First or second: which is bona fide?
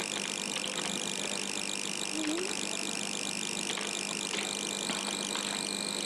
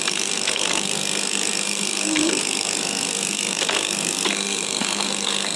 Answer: first